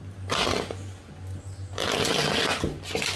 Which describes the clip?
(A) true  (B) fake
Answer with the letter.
A